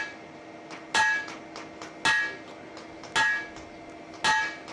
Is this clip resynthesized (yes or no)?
no